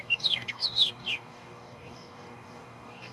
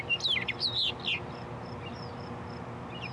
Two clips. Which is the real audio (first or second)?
second